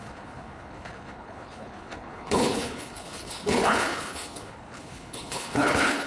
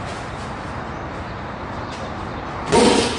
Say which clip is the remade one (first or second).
first